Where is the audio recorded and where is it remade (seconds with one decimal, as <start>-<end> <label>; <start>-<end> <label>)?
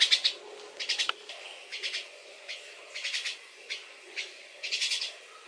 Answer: 0.0-1.7 recorded; 1.7-5.0 remade; 5.0-5.5 recorded